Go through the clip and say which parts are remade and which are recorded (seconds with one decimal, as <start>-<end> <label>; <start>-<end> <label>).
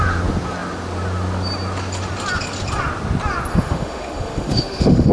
0.0-3.5 recorded; 3.5-5.1 remade